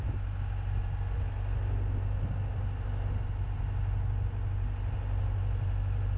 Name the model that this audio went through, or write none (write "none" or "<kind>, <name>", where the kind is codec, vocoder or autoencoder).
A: none